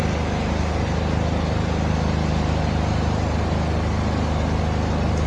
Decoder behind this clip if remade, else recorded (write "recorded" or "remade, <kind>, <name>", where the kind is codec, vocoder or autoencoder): recorded